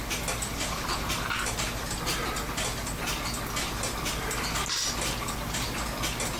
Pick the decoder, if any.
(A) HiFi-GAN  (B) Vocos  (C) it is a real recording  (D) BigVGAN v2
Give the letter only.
C